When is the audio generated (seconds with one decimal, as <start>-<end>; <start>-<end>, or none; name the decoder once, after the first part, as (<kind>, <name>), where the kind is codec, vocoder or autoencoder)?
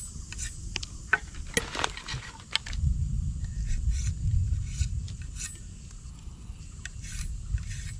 6.1-6.6 (codec, HILCodec)